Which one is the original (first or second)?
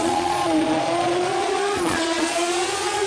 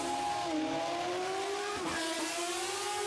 second